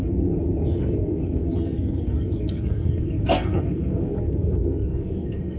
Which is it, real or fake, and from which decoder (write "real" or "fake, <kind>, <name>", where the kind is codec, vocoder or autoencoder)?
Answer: fake, codec, SNAC